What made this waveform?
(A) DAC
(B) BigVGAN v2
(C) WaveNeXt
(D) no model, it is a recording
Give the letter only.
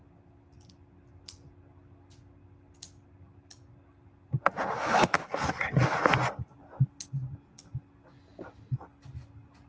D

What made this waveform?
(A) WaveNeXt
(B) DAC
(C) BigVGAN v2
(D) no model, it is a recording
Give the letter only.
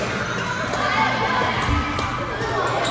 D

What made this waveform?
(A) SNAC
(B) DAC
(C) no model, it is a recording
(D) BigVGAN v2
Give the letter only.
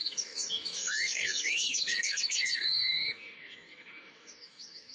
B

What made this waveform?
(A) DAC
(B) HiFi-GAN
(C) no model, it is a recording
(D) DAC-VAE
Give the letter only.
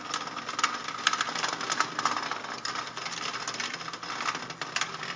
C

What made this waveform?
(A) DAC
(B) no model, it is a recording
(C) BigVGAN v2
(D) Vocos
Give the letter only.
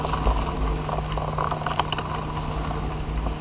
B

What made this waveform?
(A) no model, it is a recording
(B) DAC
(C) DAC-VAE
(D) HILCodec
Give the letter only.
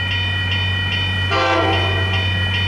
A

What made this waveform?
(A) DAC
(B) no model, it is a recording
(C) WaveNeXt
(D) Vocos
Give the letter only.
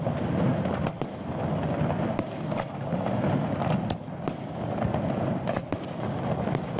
B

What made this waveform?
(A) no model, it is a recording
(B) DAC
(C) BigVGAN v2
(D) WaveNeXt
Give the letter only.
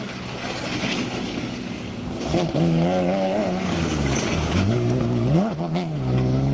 B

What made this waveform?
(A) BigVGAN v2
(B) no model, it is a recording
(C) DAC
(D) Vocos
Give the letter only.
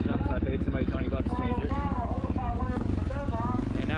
C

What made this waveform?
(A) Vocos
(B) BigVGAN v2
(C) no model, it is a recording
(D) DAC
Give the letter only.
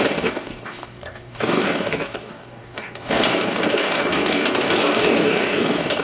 D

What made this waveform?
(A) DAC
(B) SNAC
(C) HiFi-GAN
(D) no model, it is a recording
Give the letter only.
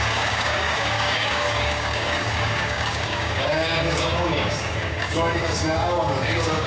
A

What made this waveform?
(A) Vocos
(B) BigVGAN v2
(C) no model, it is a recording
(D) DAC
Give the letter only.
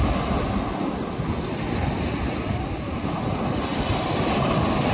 C